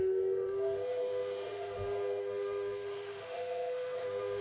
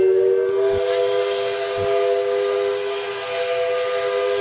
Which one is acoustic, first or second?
second